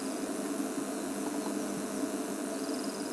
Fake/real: real